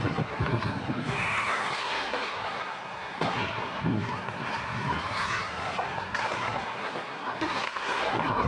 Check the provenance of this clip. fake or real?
fake